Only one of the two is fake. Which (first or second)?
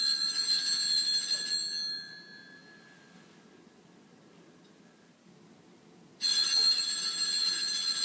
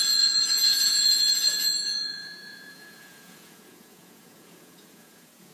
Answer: second